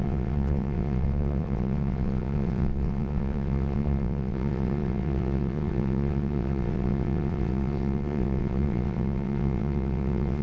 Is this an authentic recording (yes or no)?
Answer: no